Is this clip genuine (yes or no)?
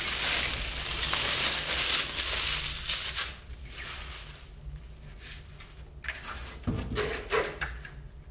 yes